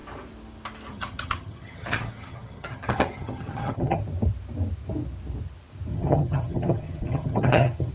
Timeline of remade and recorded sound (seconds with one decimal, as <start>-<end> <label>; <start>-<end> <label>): 0.0-0.9 recorded; 0.9-4.0 remade; 4.0-5.9 recorded; 5.9-7.9 remade